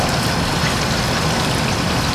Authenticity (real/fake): real